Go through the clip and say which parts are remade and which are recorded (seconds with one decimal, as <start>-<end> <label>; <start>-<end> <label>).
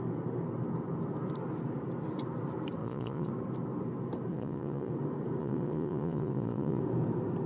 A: 0.0-2.8 recorded; 2.8-3.3 remade; 3.3-4.3 recorded; 4.3-4.9 remade; 4.9-5.4 recorded; 5.4-6.8 remade; 6.8-7.5 recorded